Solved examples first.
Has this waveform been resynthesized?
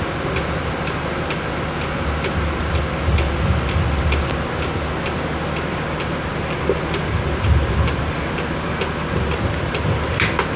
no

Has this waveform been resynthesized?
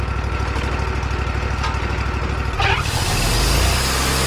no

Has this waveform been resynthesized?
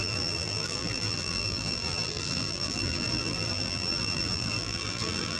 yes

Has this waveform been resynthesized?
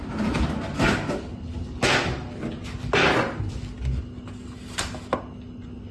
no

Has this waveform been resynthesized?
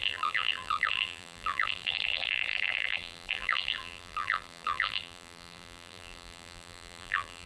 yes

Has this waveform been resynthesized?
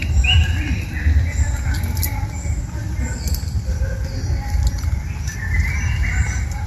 yes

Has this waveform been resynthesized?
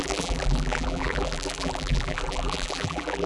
yes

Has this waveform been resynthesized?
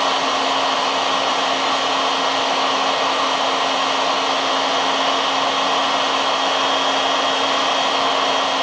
no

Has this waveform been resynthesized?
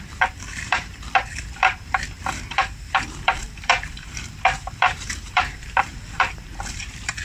yes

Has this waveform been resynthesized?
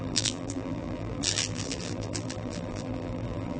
yes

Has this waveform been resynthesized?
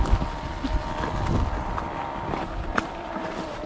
yes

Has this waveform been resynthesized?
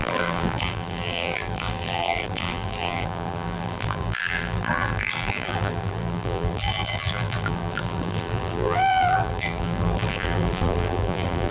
yes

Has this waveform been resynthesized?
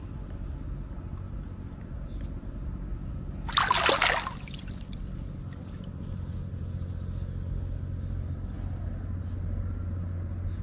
no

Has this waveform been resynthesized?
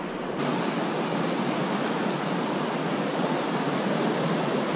no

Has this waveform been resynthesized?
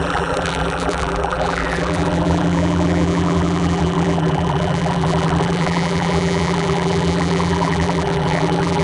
yes